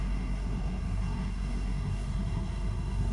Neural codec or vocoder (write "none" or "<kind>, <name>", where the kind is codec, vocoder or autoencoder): codec, SNAC